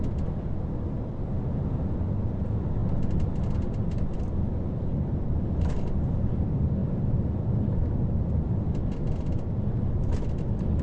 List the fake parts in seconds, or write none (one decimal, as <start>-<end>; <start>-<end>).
6.8-8.1